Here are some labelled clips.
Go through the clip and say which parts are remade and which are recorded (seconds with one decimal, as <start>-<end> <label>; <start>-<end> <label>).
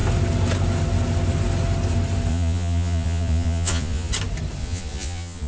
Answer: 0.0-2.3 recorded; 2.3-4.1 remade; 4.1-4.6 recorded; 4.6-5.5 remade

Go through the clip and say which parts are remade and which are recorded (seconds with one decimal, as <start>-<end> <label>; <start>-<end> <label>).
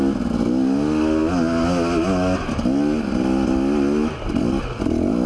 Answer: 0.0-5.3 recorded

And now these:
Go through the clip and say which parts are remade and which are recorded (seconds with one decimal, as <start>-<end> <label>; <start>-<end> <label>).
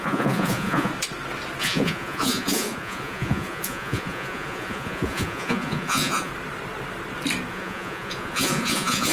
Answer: 0.0-0.9 remade; 0.9-1.6 recorded; 1.6-6.3 remade; 6.3-7.5 recorded; 7.5-9.1 remade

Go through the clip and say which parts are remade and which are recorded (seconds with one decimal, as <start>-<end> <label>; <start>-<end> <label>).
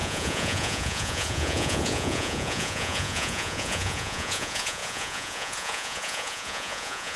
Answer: 0.0-7.2 remade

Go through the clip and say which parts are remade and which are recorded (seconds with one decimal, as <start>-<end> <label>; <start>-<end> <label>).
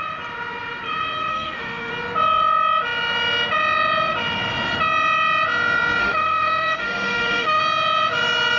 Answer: 0.0-1.3 recorded; 1.3-1.9 remade; 1.9-6.0 recorded; 6.0-7.6 remade; 7.6-8.6 recorded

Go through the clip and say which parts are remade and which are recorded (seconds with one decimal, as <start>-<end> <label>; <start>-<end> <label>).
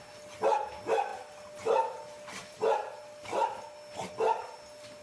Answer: 0.0-5.0 recorded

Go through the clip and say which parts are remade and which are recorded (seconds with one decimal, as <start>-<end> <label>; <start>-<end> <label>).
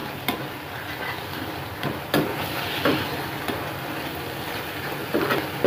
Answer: 0.0-5.7 remade